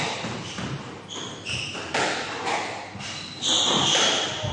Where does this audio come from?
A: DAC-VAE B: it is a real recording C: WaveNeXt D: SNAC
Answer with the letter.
B